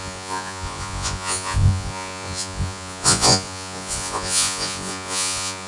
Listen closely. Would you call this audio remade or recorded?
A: remade